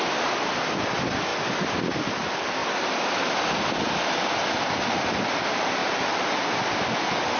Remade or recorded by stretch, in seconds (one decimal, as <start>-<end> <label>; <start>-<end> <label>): 0.0-1.3 recorded; 1.3-2.2 remade; 2.2-2.6 recorded; 2.6-4.3 remade; 4.3-5.8 recorded; 5.8-6.9 remade; 6.9-7.4 recorded